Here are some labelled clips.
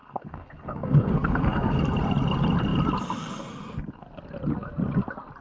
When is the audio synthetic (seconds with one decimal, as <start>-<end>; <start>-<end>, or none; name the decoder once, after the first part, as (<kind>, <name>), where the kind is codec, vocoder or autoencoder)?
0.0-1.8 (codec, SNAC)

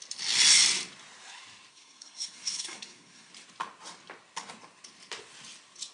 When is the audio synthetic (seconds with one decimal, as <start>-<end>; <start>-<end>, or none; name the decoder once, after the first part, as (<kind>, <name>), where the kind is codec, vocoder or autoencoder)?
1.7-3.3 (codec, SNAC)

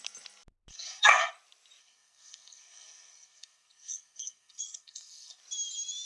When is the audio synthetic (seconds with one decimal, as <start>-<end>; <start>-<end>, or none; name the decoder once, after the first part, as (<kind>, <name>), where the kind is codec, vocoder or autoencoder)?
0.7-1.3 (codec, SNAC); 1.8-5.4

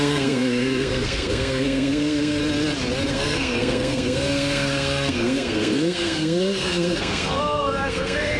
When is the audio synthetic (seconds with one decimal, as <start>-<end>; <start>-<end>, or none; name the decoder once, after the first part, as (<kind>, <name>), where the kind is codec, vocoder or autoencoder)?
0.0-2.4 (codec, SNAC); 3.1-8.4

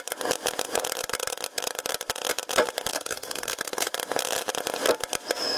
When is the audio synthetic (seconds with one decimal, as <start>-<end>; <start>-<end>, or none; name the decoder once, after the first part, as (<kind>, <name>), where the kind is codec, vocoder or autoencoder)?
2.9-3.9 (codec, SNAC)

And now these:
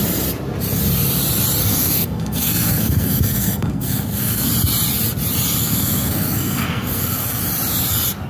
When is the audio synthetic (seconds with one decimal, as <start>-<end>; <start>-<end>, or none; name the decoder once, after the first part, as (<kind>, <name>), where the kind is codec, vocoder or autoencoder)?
1.7-4.5 (codec, SNAC); 5.6-7.4

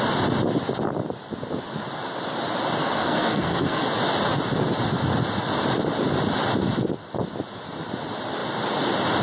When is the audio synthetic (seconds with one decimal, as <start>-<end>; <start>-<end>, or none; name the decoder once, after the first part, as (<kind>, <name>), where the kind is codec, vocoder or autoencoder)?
2.8-3.8 (codec, SNAC)